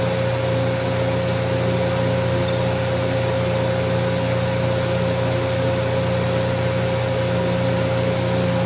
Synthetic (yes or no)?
no